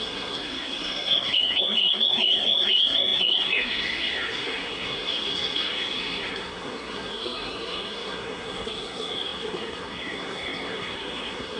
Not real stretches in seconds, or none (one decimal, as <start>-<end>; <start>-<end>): 0.0-11.6